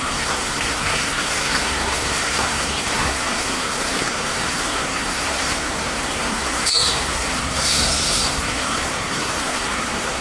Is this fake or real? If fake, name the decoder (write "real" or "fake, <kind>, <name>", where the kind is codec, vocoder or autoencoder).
fake, codec, SNAC